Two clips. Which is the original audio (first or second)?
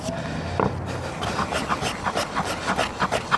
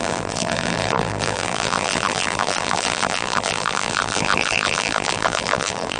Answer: first